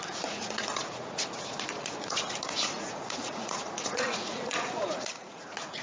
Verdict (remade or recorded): remade